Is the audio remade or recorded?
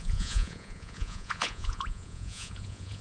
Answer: remade